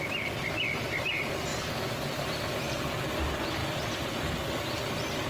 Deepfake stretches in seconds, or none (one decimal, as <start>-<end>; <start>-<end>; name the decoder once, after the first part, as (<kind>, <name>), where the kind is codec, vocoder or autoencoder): none